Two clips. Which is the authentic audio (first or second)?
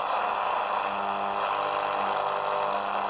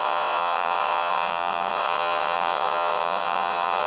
first